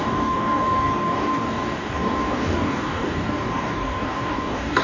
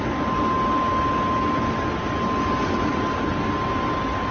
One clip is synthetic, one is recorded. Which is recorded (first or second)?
second